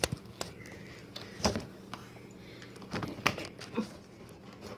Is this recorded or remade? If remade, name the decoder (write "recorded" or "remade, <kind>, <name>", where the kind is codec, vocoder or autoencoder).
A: recorded